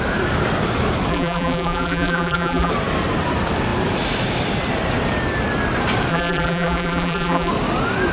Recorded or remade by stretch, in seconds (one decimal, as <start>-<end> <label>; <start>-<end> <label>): 0.0-1.1 recorded; 1.1-2.7 remade; 2.7-6.1 recorded; 6.1-7.5 remade; 7.5-8.1 recorded